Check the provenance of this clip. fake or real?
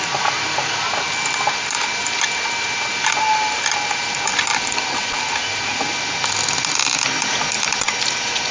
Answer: real